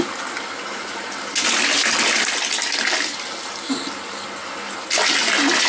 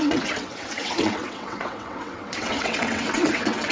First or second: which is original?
first